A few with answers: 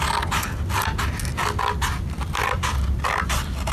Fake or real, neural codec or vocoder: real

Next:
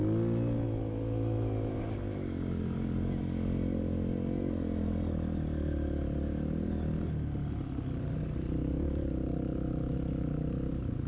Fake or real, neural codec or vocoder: real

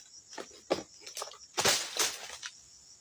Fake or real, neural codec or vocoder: real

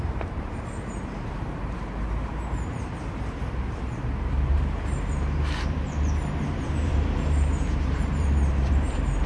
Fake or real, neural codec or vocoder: fake, vocoder, BigVGAN v2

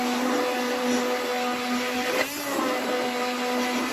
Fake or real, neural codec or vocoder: real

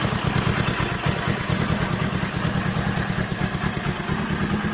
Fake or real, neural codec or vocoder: real